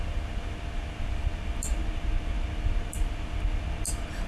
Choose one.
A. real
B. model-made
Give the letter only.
A